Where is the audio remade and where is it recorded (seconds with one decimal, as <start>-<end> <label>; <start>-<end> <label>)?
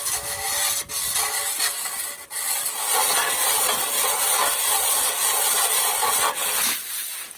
0.0-7.4 recorded